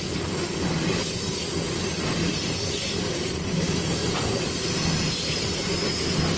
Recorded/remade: recorded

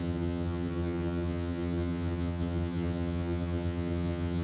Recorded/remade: remade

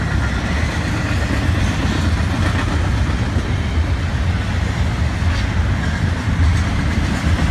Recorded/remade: recorded